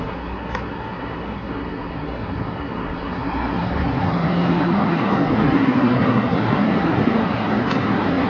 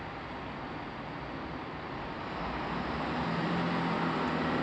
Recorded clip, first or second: second